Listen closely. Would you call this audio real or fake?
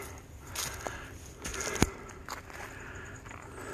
real